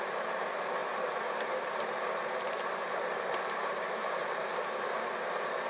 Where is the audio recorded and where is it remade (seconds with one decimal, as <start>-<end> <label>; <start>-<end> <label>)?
0.0-4.0 recorded; 4.0-4.6 remade; 4.6-5.7 recorded